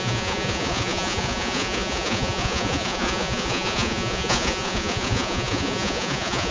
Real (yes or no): no